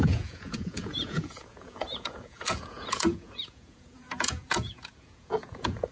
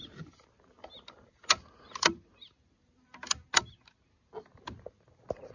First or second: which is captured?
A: second